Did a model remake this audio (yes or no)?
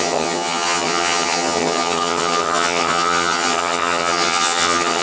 yes